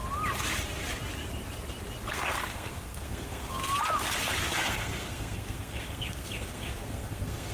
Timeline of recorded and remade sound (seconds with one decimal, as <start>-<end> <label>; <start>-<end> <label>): 0.0-2.1 recorded; 2.1-3.6 remade; 3.6-4.6 recorded; 4.6-7.5 remade